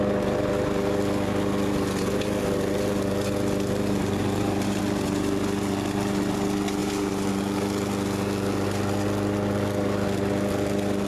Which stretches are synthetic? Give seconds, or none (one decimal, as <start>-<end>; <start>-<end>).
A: 4.2-4.8; 6.8-7.3